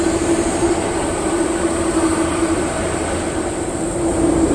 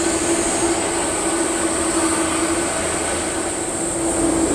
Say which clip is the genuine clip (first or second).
second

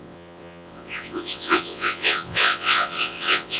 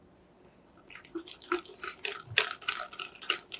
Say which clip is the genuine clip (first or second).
second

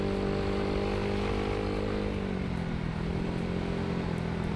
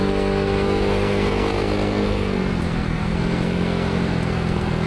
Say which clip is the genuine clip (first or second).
first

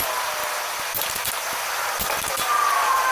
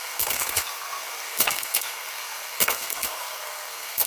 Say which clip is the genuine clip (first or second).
first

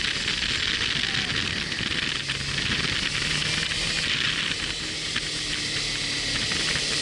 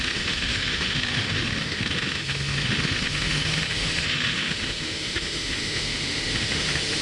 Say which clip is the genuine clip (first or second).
first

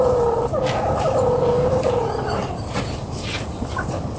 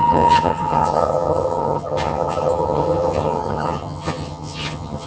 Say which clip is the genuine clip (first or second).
first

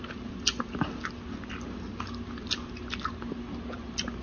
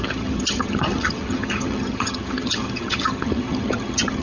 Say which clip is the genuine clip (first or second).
first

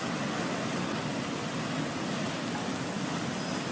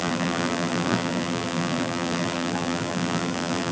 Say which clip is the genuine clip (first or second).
first